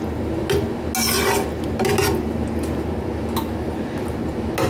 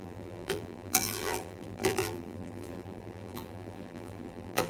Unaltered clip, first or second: first